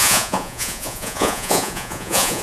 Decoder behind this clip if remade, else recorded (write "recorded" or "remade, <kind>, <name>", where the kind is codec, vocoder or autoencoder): remade, vocoder, Vocos